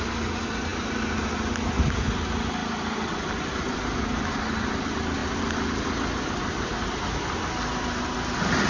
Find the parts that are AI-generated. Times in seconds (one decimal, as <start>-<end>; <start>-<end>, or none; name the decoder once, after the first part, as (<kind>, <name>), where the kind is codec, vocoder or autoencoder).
2.6-4.2 (vocoder, BigVGAN v2); 5.2-7.1